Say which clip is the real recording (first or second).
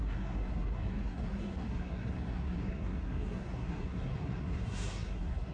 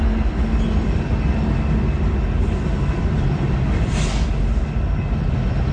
second